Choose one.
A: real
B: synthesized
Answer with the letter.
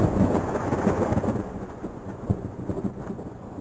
B